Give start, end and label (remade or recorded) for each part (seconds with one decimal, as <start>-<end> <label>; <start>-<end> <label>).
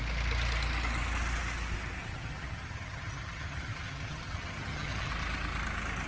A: 0.0-2.0 recorded; 2.0-5.1 remade; 5.1-6.1 recorded